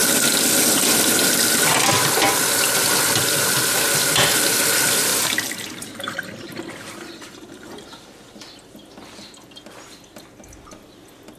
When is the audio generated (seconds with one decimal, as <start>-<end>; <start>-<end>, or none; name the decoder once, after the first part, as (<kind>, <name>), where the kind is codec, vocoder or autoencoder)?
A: 5.1-7.9 (vocoder, BigVGAN v2)

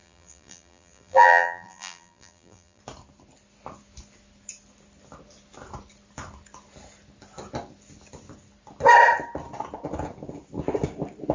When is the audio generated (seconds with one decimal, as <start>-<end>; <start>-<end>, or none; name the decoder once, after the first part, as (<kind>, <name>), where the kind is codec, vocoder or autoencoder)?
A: 0.0-2.8 (vocoder, BigVGAN v2)

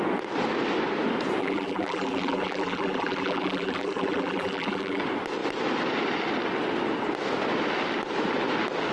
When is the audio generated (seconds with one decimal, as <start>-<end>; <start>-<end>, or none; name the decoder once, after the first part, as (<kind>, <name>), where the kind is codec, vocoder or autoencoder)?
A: 1.4-5.0 (vocoder, BigVGAN v2)

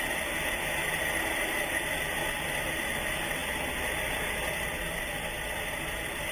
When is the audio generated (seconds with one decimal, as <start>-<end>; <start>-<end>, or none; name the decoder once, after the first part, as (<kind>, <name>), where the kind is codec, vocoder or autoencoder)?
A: 0.0-3.4 (vocoder, BigVGAN v2); 4.2-6.3

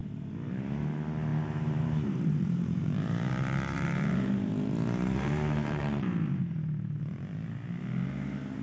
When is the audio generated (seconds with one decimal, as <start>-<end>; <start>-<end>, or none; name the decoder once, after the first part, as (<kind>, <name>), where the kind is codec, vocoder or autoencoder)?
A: 0.0-0.5 (vocoder, BigVGAN v2); 1.3-6.4

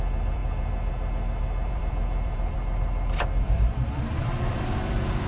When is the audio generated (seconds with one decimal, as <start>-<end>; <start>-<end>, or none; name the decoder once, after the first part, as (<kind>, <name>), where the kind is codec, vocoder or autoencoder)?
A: 0.0-0.4 (vocoder, BigVGAN v2); 1.7-5.3

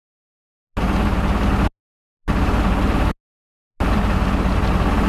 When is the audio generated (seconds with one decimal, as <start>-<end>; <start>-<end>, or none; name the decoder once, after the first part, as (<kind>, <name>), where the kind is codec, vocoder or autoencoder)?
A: none

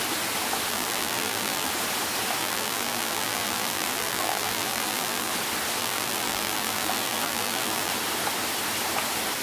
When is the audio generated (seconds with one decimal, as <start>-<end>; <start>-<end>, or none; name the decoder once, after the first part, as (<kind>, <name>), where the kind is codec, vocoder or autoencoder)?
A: 0.7-1.7 (vocoder, BigVGAN v2); 2.4-5.3; 5.8-7.9